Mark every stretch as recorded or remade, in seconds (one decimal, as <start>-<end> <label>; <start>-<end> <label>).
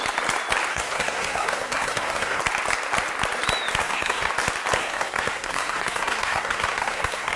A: 0.0-0.7 recorded; 0.7-2.4 remade; 2.4-3.8 recorded; 3.8-4.3 remade; 4.3-4.8 recorded; 4.8-7.4 remade